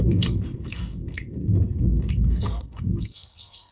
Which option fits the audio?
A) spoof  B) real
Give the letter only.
A